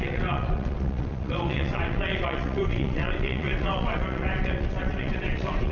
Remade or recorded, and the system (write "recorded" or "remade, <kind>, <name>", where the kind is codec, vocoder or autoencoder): remade, vocoder, WaveNeXt